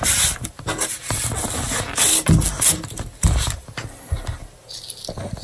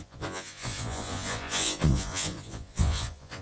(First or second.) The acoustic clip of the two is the first